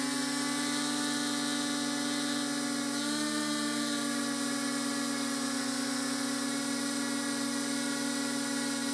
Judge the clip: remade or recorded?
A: recorded